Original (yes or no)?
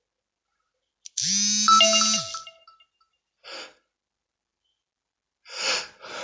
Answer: yes